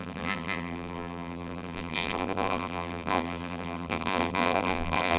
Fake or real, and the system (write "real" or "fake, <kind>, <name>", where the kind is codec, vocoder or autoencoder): fake, vocoder, BigVGAN v2